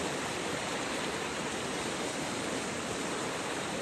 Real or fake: fake